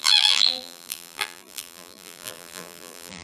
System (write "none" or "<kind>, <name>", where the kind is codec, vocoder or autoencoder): vocoder, BigVGAN v2